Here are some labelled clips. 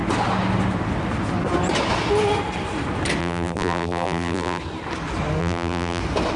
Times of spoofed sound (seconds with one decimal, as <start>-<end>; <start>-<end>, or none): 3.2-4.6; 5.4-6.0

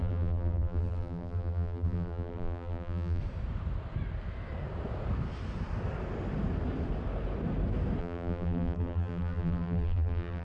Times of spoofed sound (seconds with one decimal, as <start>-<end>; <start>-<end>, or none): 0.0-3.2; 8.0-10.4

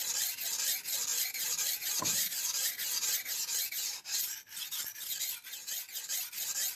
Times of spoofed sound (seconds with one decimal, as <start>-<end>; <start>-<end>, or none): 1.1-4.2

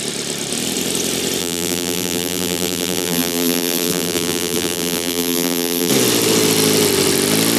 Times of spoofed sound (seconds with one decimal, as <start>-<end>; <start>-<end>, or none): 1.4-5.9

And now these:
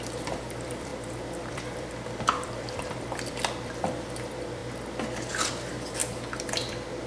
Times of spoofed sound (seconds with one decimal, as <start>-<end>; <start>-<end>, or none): 0.0-4.6; 5.3-6.0

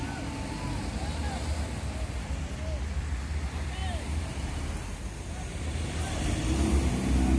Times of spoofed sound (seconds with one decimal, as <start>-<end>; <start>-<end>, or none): 3.8-6.9

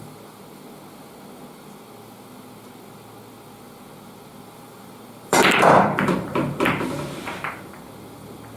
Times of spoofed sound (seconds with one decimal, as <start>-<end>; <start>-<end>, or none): 4.3-7.9

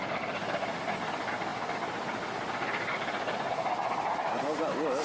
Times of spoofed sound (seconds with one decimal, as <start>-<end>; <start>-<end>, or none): 1.5-3.4